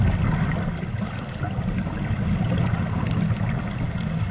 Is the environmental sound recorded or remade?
recorded